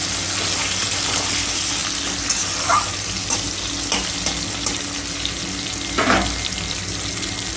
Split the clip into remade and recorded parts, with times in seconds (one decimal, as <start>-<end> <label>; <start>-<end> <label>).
0.0-7.6 recorded

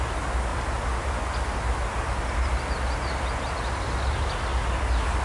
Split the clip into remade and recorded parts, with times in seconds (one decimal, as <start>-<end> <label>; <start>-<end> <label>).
0.0-5.2 recorded

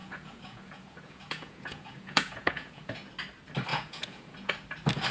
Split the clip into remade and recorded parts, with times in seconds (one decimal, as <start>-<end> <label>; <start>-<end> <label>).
0.0-3.1 remade; 3.1-3.7 recorded; 3.7-4.5 remade; 4.5-5.1 recorded